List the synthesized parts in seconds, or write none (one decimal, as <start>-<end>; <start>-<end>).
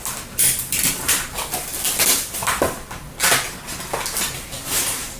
none